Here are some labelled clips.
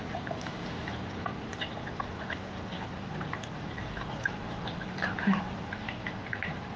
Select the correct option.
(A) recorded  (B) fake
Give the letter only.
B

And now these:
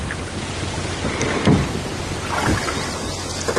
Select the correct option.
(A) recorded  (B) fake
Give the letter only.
A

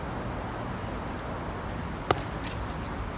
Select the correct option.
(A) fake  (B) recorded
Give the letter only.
B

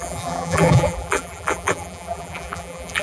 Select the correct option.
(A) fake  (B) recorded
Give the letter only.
A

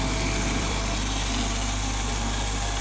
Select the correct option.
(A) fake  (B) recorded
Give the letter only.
A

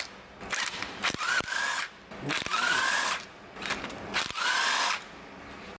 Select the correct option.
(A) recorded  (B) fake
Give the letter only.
A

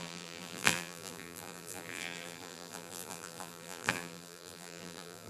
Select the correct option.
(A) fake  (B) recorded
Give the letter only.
A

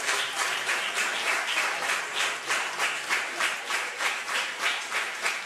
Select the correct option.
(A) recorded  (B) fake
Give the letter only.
B